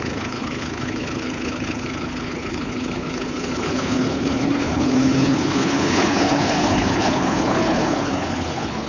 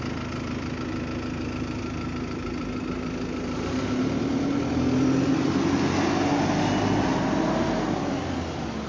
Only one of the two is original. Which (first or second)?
second